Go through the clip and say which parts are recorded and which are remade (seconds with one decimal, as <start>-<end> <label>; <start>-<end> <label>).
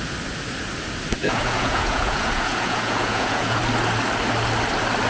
0.0-1.2 recorded; 1.2-3.6 remade; 3.6-5.1 recorded